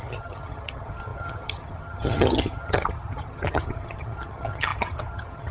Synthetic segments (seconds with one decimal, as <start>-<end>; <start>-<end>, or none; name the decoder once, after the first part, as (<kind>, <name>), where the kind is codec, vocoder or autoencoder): 0.0-5.5 (vocoder, HiFi-GAN)